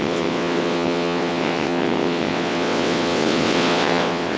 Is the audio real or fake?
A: fake